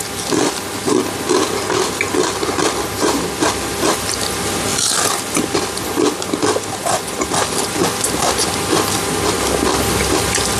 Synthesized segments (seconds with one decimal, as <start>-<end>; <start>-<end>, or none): none